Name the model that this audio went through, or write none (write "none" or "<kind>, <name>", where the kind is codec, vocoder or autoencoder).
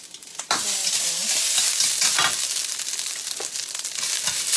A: none